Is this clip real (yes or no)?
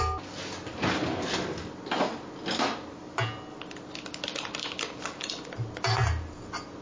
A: yes